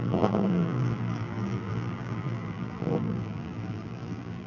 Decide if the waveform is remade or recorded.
remade